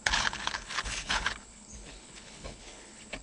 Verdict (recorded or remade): remade